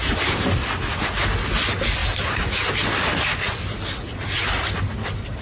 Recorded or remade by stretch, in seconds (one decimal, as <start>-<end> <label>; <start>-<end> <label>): 0.0-5.4 recorded